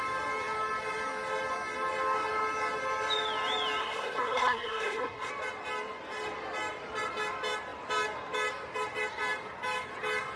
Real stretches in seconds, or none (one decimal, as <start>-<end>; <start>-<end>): 0.0-3.8; 5.3-10.4